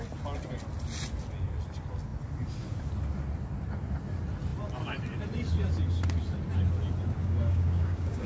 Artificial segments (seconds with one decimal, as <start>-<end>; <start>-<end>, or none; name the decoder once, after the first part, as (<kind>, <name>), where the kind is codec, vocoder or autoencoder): 7.2-8.3 (codec, DAC)